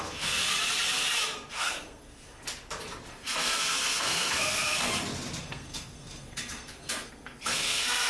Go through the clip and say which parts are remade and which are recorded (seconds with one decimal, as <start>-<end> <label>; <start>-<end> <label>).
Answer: 0.0-0.4 remade; 0.4-1.5 recorded; 1.5-2.4 remade; 2.4-3.1 recorded; 3.1-4.9 remade; 4.9-5.4 recorded; 5.4-8.1 remade